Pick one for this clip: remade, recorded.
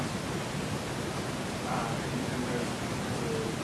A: recorded